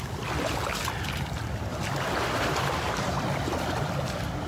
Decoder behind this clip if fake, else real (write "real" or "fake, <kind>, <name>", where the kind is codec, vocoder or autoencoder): real